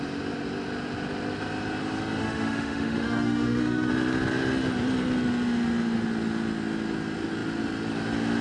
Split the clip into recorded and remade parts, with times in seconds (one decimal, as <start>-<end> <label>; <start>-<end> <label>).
0.0-2.2 recorded; 2.2-3.9 remade; 3.9-8.4 recorded